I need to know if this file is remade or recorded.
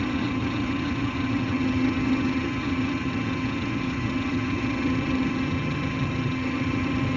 remade